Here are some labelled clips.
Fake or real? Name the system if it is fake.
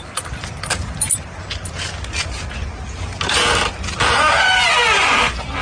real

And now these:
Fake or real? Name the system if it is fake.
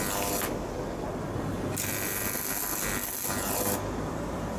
real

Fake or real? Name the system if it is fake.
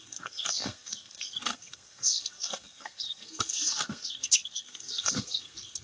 fake, codec, SNAC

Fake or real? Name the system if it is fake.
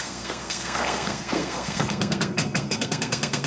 fake, codec, SNAC